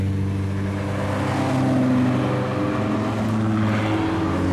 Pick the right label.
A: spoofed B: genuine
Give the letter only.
B